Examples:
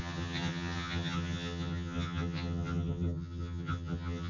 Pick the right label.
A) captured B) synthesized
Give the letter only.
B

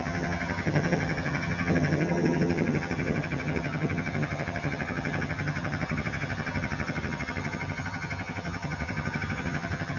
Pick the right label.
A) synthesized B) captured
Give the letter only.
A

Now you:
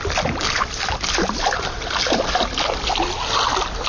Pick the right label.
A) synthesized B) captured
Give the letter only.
B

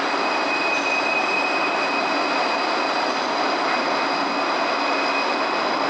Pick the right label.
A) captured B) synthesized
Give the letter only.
A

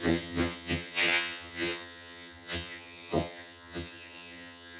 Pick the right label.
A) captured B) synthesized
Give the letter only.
B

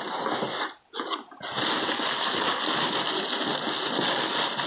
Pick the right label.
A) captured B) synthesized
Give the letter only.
A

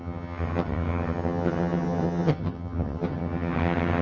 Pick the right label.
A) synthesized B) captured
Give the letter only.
A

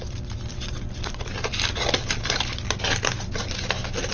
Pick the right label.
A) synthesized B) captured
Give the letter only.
B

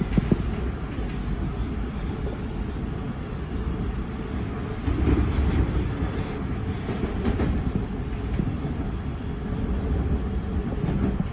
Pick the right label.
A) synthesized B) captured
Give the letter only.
B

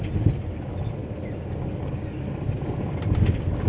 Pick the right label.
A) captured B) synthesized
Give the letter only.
A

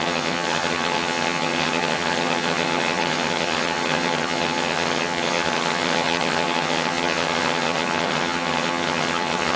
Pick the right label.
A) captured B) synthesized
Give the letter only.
B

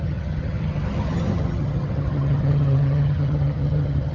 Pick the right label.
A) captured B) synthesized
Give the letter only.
B